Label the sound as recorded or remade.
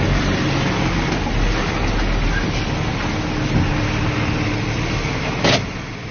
recorded